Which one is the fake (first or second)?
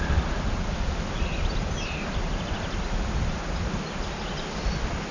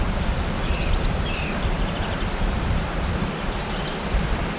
second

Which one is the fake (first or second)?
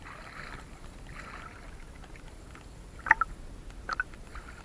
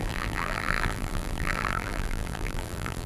second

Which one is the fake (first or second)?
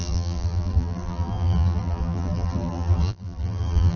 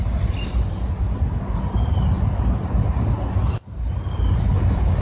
first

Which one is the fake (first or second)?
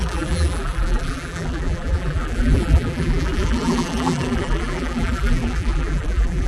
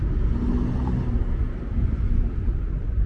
first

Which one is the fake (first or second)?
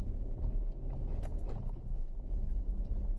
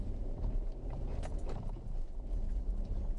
second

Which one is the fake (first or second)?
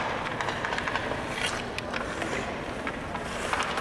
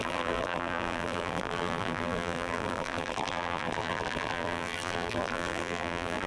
second